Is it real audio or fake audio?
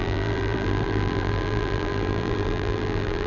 fake